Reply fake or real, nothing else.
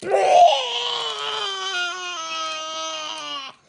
real